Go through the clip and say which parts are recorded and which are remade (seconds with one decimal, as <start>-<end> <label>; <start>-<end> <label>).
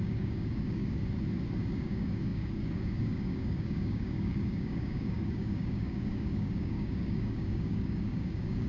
0.0-1.0 remade; 1.0-1.7 recorded; 1.7-8.7 remade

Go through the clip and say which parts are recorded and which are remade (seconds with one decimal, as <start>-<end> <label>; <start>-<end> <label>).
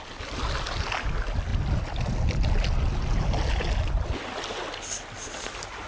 0.0-5.9 recorded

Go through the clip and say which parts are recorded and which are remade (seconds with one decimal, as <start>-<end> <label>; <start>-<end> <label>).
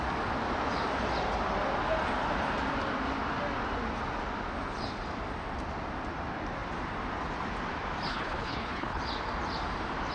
0.0-8.1 recorded; 8.1-9.0 remade; 9.0-10.1 recorded